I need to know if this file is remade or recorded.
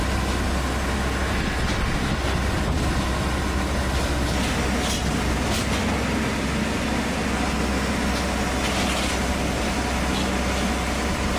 recorded